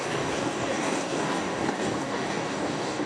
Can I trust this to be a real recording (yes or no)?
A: no